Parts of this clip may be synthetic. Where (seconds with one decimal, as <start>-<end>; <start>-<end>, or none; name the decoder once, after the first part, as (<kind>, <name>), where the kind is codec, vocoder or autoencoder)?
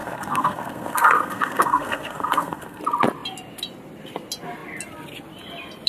0.0-2.8 (codec, SNAC)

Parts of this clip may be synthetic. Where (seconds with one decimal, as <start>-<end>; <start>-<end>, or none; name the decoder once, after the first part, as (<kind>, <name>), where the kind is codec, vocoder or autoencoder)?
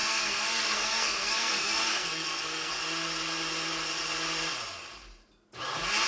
0.0-2.7 (codec, SNAC)